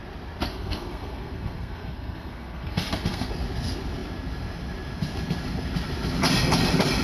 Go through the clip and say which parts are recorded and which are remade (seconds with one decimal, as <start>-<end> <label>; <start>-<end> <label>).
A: 0.0-0.5 recorded; 0.5-3.3 remade; 3.3-7.0 recorded